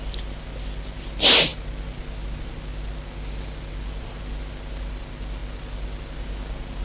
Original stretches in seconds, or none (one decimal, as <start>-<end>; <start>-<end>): 0.0-6.8